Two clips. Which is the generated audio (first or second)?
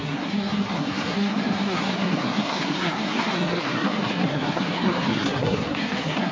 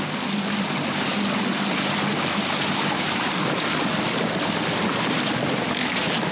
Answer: first